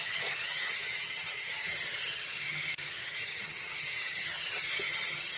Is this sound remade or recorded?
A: remade